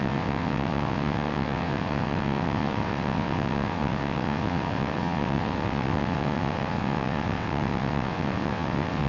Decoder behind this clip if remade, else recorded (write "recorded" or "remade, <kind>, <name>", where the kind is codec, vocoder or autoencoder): remade, vocoder, WaveNeXt